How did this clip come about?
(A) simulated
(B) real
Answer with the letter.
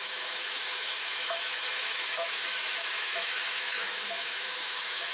A